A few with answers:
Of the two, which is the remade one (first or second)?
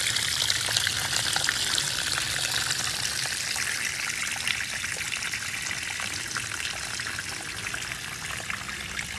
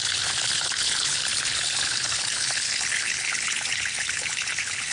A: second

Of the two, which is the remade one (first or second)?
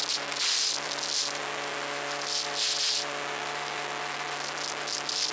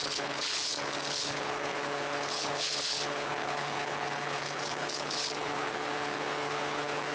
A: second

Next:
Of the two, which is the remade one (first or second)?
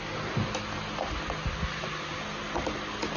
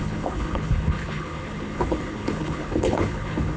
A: second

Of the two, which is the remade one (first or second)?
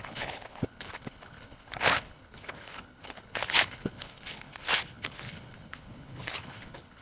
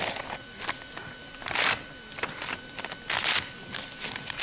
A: first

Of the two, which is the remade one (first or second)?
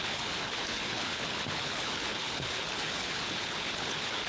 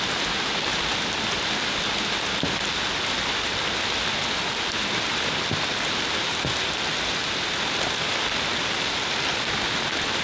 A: first